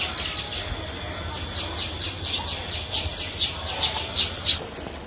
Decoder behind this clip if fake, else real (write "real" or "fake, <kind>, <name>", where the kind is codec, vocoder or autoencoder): real